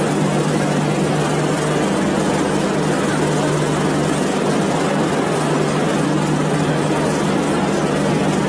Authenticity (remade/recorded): recorded